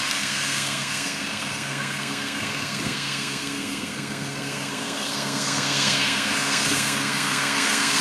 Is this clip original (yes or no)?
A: no